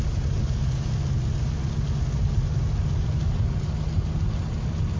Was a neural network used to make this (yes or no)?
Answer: no